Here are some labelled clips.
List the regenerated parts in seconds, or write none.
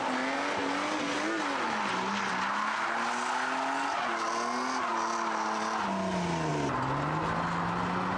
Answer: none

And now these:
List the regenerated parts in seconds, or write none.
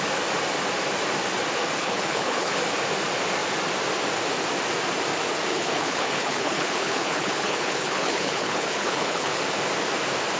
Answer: 1.8-2.6; 5.5-9.4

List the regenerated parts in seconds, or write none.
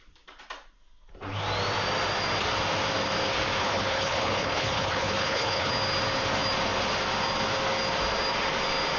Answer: 3.6-5.7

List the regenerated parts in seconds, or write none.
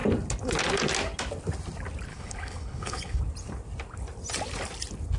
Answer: 2.1-3.2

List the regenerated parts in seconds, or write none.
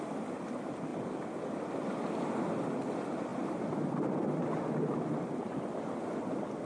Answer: none